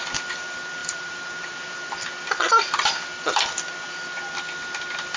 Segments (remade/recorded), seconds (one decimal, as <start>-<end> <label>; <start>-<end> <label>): 0.0-0.8 recorded; 0.8-1.9 remade; 1.9-5.2 recorded